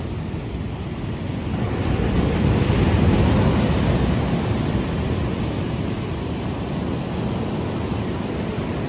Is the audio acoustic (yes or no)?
yes